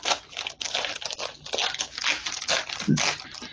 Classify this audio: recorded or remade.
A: recorded